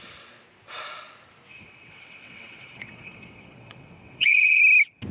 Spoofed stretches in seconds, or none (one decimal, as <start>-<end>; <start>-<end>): 1.5-4.6

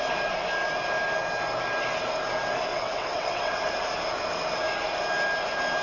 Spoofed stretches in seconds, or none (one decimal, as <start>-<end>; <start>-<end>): 2.7-3.6

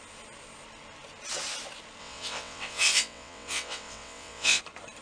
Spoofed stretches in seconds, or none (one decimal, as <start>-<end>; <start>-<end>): 2.0-4.6

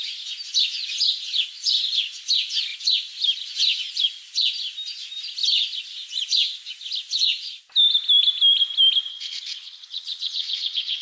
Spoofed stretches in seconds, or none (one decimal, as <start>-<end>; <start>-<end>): 9.1-11.0

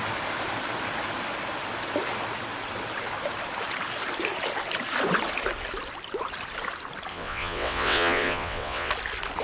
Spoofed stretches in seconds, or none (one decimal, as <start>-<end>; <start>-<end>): 7.1-8.9

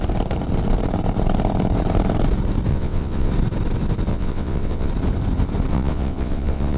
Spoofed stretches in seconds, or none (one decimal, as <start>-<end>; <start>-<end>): 2.7-3.3; 4.1-4.9; 5.7-6.8

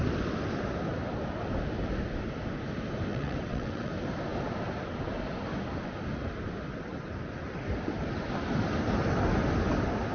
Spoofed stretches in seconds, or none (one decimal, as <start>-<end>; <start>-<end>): 3.1-3.9

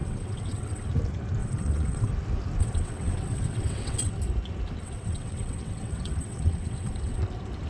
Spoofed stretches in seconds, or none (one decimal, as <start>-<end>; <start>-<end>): 0.0-0.9; 1.4-2.1; 2.6-4.1; 4.8-7.2